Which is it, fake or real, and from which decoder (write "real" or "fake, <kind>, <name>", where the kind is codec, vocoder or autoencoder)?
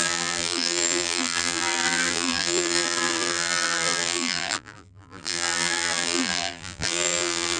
fake, vocoder, BigVGAN v2